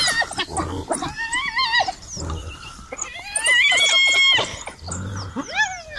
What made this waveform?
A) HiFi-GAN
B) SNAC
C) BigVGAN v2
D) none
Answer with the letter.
D